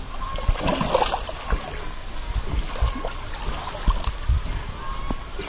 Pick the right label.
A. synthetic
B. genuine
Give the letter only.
B